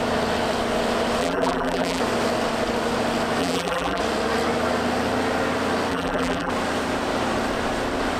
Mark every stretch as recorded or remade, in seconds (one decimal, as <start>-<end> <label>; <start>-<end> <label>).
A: 0.0-1.2 recorded; 1.2-2.0 remade; 2.0-3.4 recorded; 3.4-4.0 remade; 4.0-5.9 recorded; 5.9-6.5 remade; 6.5-8.2 recorded